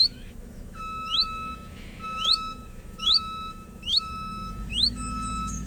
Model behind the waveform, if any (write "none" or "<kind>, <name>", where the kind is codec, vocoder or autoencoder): autoencoder, DAC-VAE